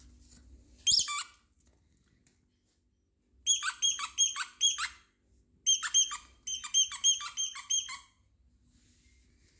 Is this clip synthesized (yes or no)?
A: no